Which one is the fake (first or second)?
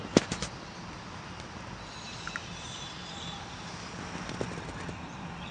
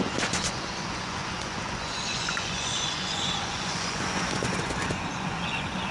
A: second